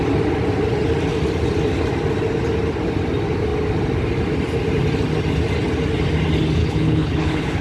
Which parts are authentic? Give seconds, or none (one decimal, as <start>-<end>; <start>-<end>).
0.0-6.6